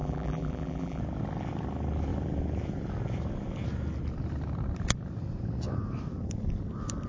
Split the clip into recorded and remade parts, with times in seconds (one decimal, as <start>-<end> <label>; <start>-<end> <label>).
0.0-1.0 remade; 1.0-7.1 recorded